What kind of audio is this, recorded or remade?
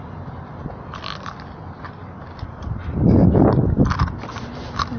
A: recorded